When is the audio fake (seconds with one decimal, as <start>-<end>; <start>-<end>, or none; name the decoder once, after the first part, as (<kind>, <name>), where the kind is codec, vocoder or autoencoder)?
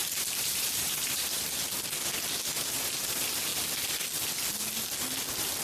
0.0-1.4 (vocoder, BigVGAN v2)